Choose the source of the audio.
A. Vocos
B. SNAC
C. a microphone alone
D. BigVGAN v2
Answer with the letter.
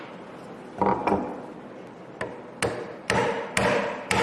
C